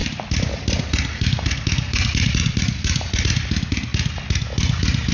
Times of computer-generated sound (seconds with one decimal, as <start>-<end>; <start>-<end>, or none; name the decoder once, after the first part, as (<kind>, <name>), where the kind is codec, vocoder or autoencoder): 0.0-3.1 (vocoder, BigVGAN v2)